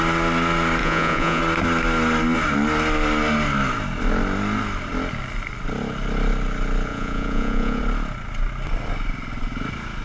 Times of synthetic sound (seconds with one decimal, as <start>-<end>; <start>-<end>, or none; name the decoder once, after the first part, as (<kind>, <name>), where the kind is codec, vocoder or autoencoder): 0.8-1.4 (vocoder, Vocos); 6.9-7.8